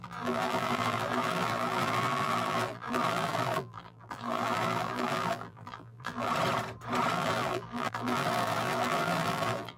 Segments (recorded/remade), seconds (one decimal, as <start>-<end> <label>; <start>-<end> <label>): 0.0-6.3 remade; 6.3-7.1 recorded; 7.1-9.8 remade